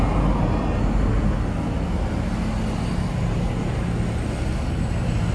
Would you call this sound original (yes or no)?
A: yes